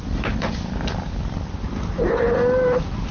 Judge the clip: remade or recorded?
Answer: recorded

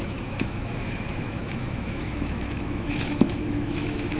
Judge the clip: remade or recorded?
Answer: remade